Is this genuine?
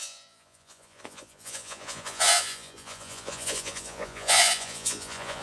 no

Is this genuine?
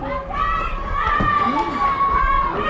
yes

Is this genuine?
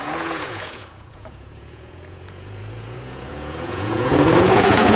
no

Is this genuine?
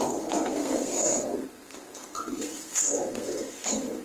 no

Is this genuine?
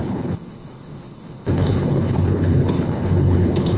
no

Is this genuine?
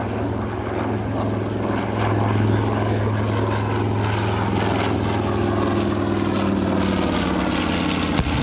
yes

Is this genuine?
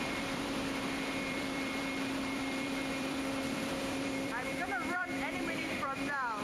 no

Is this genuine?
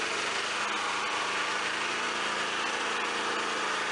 yes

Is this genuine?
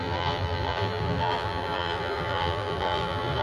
no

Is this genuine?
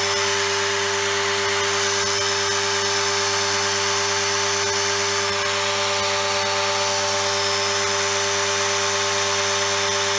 yes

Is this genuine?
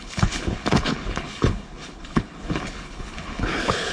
no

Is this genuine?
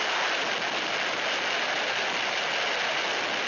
yes